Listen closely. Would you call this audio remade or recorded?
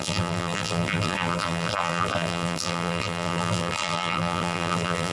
remade